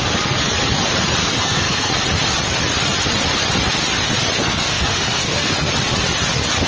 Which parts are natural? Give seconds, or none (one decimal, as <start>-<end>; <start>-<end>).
0.0-1.2; 1.9-4.4; 5.7-6.7